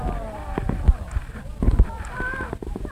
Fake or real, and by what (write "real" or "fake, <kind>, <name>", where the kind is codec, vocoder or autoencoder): fake, vocoder, BigVGAN v2